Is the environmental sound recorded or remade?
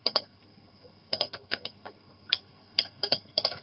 remade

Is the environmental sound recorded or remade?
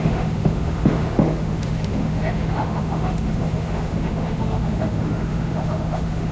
remade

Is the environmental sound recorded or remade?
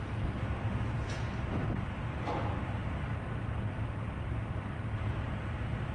recorded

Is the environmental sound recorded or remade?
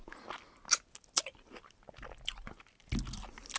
recorded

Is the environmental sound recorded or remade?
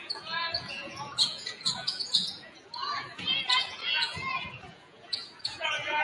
remade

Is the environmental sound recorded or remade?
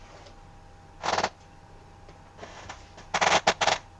recorded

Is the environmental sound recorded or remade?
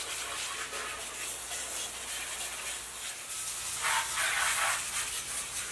recorded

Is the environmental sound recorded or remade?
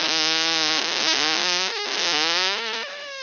remade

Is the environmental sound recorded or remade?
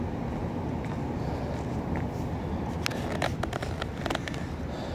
recorded